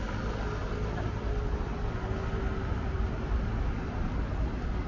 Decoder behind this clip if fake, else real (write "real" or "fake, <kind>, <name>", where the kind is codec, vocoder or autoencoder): real